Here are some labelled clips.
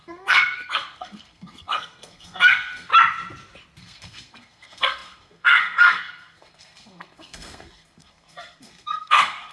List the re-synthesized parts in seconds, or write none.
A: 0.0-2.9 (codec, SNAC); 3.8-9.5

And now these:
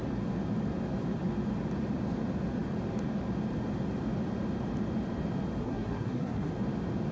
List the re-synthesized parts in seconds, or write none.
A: 5.6-6.5 (codec, SNAC)

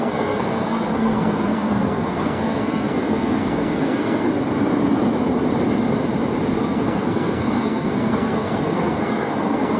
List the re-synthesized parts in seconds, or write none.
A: 0.0-4.3 (codec, SNAC); 6.6-9.8

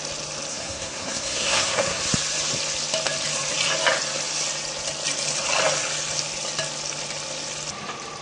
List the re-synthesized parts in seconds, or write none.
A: 0.5-2.0 (codec, SNAC)

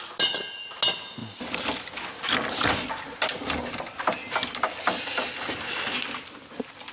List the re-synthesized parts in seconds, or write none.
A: none

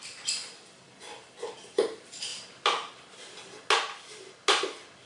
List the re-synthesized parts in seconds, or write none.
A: none

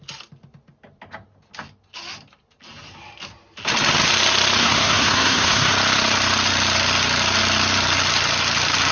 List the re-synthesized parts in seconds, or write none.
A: 4.6-5.7 (codec, SNAC)